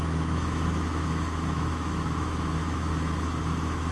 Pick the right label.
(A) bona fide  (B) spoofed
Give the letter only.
B